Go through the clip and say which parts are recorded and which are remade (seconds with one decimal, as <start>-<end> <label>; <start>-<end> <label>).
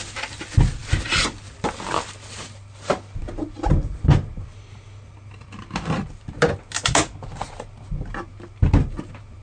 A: 0.0-9.4 recorded